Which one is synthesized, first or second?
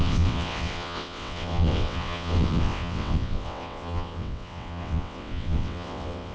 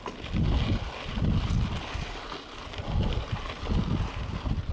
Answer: first